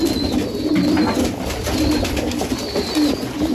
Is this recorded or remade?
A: recorded